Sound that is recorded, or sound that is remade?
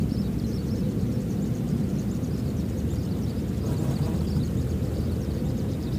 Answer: remade